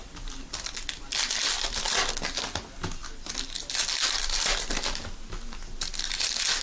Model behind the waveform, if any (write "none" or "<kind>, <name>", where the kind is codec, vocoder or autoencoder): none